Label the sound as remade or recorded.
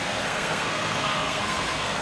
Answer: remade